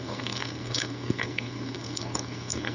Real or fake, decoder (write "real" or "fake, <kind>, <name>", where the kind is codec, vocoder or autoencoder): fake, codec, SNAC